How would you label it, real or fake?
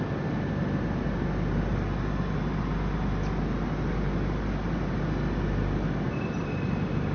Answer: real